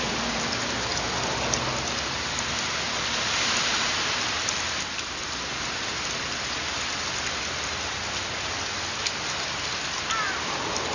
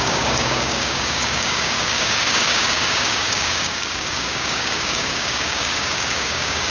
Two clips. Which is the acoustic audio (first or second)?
first